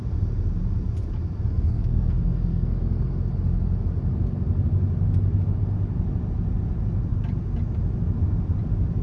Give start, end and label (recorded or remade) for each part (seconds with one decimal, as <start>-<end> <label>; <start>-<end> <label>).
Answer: 0.0-1.5 recorded; 1.5-3.1 remade; 3.1-9.0 recorded